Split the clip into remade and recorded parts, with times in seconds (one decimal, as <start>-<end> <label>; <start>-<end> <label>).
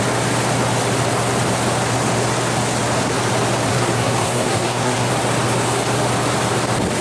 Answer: 0.0-3.7 recorded; 3.7-5.1 remade; 5.1-7.0 recorded